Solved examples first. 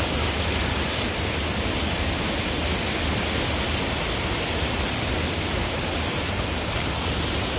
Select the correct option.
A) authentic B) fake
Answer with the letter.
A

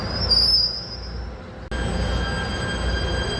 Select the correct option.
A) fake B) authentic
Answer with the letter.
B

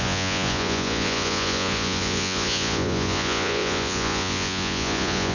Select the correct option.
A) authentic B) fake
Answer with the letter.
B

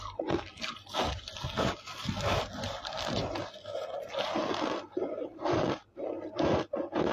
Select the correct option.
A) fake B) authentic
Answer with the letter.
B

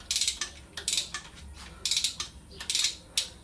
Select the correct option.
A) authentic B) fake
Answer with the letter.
A